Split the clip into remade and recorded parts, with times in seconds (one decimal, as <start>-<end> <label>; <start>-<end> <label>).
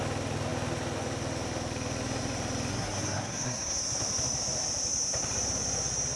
0.0-2.7 recorded; 2.7-3.8 remade; 3.8-6.2 recorded